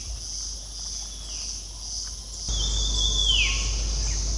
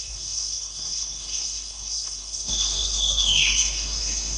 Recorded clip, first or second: first